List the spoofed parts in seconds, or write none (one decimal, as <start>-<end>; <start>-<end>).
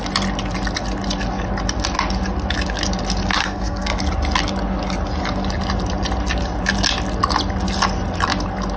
3.4-4.0